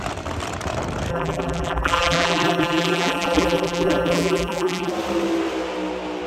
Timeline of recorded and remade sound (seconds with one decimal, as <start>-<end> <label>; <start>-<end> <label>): 0.0-1.1 recorded; 1.1-4.9 remade; 4.9-6.3 recorded